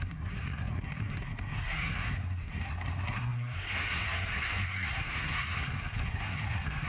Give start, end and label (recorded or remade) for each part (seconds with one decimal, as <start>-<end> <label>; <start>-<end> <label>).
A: 0.0-6.9 remade

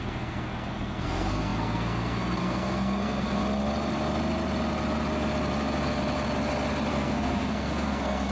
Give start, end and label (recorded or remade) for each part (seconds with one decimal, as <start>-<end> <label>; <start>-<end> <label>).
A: 0.0-3.4 remade; 3.4-6.9 recorded; 6.9-8.3 remade

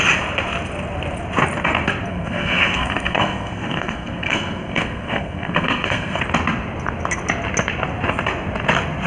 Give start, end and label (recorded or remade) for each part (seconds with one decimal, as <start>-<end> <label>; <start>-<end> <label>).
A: 0.0-2.1 recorded; 2.1-6.2 remade; 6.2-9.1 recorded

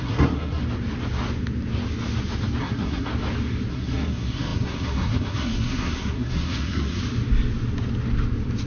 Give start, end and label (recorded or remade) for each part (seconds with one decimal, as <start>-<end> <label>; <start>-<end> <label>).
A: 0.0-0.6 remade; 0.6-2.6 recorded; 2.6-3.1 remade; 3.1-3.7 recorded; 3.7-7.0 remade; 7.0-8.7 recorded

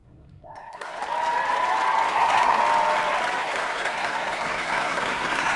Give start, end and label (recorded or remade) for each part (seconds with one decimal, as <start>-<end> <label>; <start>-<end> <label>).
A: 0.0-1.0 remade; 1.0-2.1 recorded; 2.1-2.6 remade; 2.6-3.4 recorded; 3.4-5.6 remade

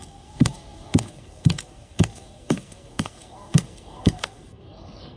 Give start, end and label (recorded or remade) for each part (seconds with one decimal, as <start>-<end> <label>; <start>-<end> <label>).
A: 0.0-5.2 remade